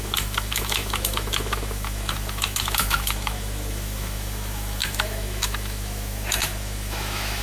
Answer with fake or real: fake